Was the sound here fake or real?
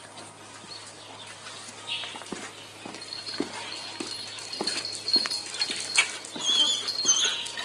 real